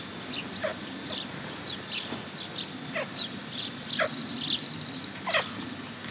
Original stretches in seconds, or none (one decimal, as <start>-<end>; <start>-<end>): 0.0-6.1